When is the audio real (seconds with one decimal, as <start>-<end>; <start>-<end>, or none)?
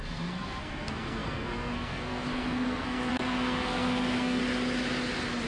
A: 4.4-5.5